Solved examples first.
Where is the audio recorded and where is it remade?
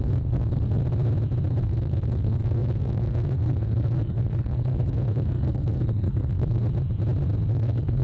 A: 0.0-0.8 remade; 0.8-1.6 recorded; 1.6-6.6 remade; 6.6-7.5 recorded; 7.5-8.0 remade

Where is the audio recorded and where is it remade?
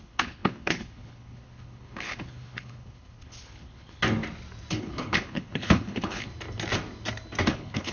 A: 0.0-4.0 remade; 4.0-4.7 recorded; 4.7-6.3 remade; 6.3-7.5 recorded; 7.5-7.9 remade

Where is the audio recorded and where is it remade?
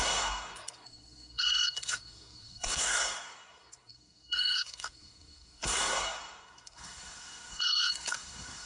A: 0.0-8.7 remade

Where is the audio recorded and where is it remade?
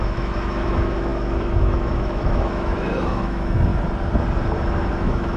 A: 0.0-3.7 remade; 3.7-4.9 recorded; 4.9-5.4 remade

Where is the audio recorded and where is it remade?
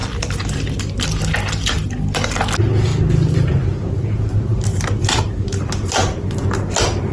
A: 0.0-4.5 recorded; 4.5-5.2 remade; 5.2-7.1 recorded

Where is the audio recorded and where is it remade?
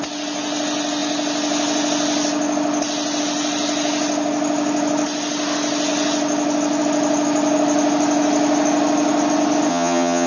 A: 0.0-9.7 recorded; 9.7-10.3 remade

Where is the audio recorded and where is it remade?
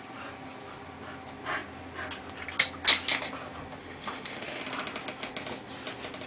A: 0.0-3.8 recorded; 3.8-4.6 remade; 4.6-6.3 recorded